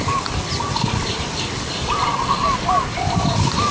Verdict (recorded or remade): recorded